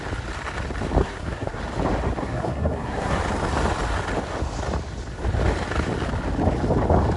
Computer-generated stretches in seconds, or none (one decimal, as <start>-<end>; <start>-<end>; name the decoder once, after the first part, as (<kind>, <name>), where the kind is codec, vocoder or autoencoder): 1.0-1.6 (codec, SNAC); 2.2-3.2